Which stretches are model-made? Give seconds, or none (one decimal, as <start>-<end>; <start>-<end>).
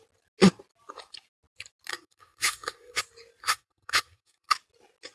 1.9-3.0; 3.4-4.5